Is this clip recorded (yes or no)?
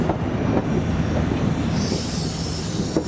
yes